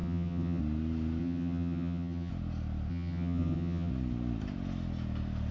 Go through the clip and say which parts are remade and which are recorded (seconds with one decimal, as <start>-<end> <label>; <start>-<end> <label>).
0.0-0.6 remade; 0.6-1.2 recorded; 1.2-2.3 remade; 2.3-2.9 recorded; 2.9-3.9 remade; 3.9-5.5 recorded